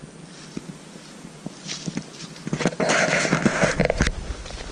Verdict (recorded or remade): recorded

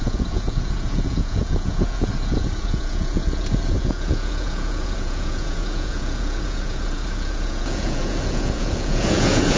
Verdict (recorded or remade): remade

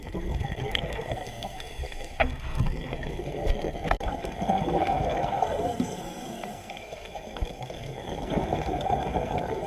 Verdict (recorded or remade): remade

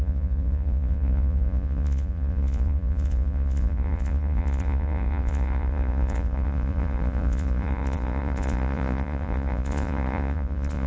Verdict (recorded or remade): remade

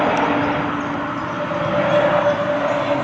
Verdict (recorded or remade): recorded